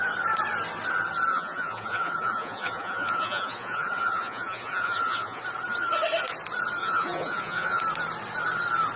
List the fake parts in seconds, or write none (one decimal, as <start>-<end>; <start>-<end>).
1.3-5.4; 6.8-7.8